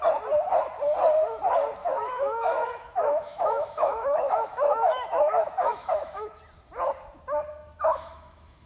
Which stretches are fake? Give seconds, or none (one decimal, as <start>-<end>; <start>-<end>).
1.8-6.4; 7.6-8.7